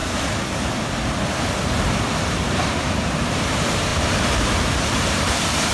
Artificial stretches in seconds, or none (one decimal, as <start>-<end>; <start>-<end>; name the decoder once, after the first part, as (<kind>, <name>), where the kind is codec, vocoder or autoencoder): 2.3-5.7 (vocoder, BigVGAN v2)